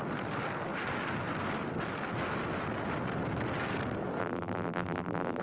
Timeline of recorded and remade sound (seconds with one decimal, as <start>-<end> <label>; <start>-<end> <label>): 0.0-4.2 recorded; 4.2-5.4 remade